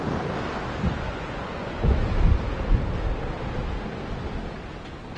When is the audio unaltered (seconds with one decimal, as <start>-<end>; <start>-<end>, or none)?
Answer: 0.0-0.9; 2.1-5.2